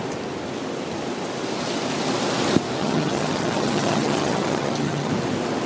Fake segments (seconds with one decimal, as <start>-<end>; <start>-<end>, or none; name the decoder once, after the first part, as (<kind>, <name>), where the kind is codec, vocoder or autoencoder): 2.8-5.1 (vocoder, HiFi-GAN)

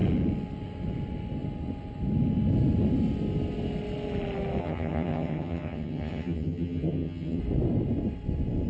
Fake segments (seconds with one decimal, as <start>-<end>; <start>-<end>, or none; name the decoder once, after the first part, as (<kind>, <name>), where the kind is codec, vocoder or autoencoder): 4.6-7.4 (vocoder, HiFi-GAN)

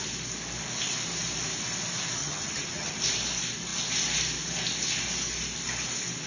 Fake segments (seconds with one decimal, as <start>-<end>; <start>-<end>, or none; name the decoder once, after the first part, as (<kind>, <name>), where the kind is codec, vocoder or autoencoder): 2.2-3.0 (vocoder, HiFi-GAN)

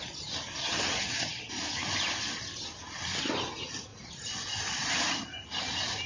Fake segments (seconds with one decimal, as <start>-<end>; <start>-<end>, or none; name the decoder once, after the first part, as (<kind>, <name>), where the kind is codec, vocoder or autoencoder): 0.6-1.5 (vocoder, HiFi-GAN)

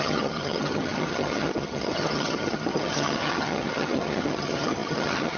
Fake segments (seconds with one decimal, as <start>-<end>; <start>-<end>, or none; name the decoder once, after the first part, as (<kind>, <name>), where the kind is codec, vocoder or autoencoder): 0.0-5.4 (vocoder, HiFi-GAN)

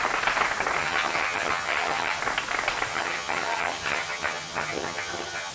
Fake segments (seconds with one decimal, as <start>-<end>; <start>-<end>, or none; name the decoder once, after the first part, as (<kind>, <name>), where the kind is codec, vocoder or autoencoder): 0.8-2.2 (vocoder, HiFi-GAN); 2.9-5.5